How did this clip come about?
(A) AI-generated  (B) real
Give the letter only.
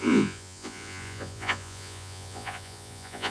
A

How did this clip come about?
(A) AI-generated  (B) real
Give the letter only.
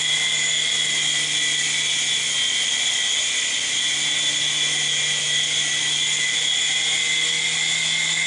B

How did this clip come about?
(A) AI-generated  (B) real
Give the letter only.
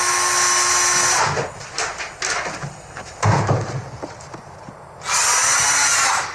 B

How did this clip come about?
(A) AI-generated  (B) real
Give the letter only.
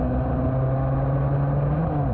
B